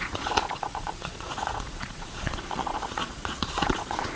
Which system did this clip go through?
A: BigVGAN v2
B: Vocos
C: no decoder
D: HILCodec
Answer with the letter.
B